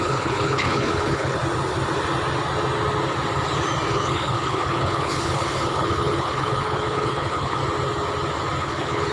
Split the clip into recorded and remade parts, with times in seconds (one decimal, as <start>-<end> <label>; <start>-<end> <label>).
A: 0.0-1.4 remade; 1.4-3.9 recorded; 3.9-7.6 remade; 7.6-8.6 recorded; 8.6-9.1 remade